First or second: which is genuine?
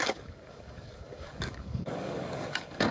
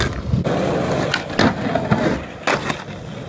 second